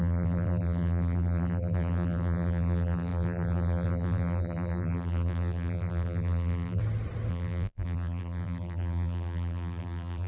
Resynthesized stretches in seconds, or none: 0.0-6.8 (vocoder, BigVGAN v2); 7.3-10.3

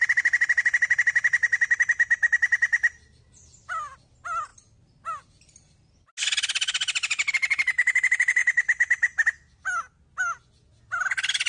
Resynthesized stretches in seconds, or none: none